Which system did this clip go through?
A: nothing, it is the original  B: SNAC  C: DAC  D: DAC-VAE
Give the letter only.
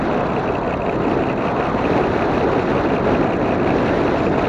A